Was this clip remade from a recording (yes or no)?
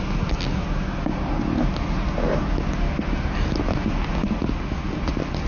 no